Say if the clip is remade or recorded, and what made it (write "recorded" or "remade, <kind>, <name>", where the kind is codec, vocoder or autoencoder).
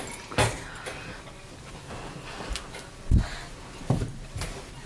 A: recorded